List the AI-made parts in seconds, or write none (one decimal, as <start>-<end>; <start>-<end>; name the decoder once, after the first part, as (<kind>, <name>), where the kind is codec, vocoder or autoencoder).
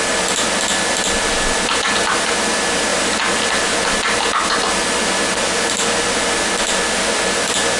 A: none